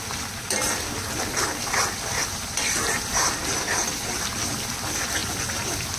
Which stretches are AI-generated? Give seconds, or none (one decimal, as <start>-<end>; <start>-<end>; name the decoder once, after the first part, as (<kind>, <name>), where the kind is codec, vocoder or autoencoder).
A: none